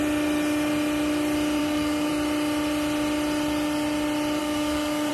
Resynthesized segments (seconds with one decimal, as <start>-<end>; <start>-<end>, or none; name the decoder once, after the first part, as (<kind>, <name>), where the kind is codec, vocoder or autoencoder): 1.6-2.1 (codec, DAC); 4.4-5.1